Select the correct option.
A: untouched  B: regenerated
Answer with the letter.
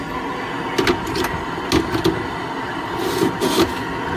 A